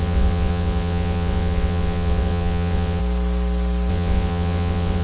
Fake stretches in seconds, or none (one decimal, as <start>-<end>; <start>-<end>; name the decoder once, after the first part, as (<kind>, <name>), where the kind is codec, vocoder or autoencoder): 0.0-3.0 (vocoder, WaveNeXt); 3.9-5.0